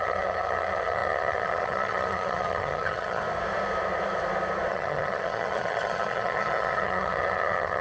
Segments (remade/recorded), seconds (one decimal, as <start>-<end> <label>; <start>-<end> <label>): 0.0-3.2 remade; 3.2-4.7 recorded; 4.7-7.8 remade

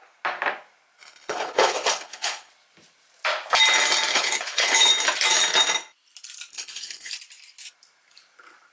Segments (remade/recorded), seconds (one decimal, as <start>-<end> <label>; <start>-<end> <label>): 0.0-1.0 recorded; 1.0-2.5 remade; 2.5-4.1 recorded; 4.1-4.9 remade; 4.9-6.5 recorded; 6.5-7.1 remade; 7.1-8.7 recorded

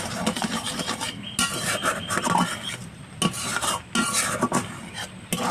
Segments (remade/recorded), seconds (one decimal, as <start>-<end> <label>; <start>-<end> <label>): 0.0-5.5 recorded

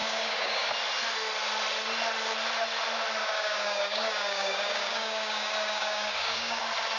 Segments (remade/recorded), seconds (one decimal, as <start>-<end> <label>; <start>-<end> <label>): 0.0-0.7 remade; 0.7-3.2 recorded; 3.2-6.6 remade; 6.6-7.0 recorded

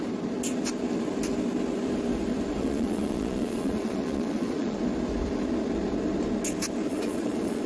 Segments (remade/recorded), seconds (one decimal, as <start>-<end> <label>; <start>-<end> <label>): 0.0-2.6 recorded; 2.6-4.8 remade; 4.8-6.9 recorded; 6.9-7.7 remade

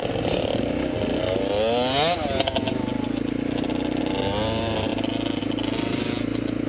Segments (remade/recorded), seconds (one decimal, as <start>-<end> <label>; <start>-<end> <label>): 0.0-6.7 recorded

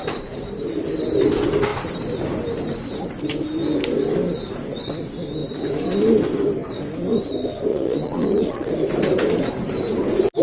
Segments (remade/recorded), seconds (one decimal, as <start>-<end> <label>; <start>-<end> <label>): 0.0-7.7 recorded; 7.7-8.7 remade; 8.7-10.4 recorded

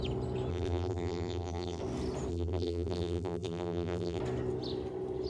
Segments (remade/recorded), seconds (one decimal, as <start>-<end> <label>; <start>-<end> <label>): 0.0-0.5 recorded; 0.5-1.8 remade; 1.8-2.3 recorded; 2.3-4.2 remade; 4.2-5.3 recorded